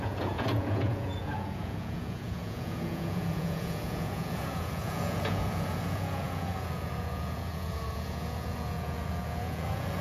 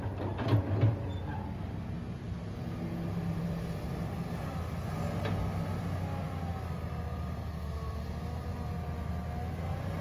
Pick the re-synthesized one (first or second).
first